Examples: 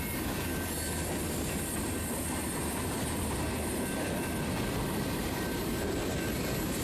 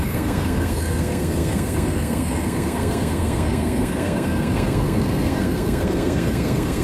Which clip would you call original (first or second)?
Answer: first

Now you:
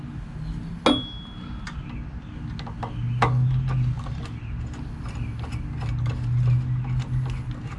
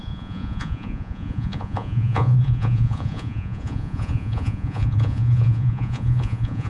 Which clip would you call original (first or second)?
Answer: first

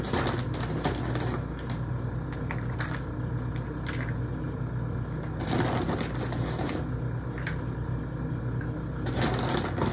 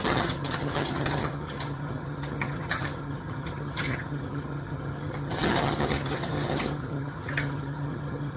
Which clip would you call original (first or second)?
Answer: first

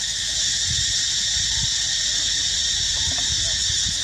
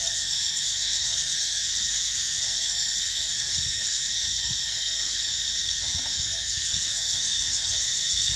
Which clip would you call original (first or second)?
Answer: first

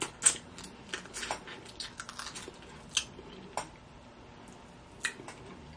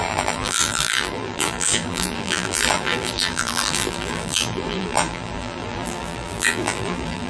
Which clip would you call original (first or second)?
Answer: first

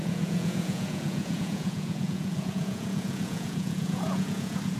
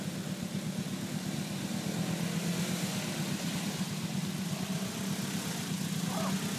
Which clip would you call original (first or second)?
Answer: second